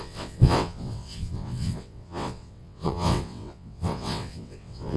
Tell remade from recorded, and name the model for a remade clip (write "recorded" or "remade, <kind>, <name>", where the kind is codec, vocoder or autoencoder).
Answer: remade, vocoder, WaveNeXt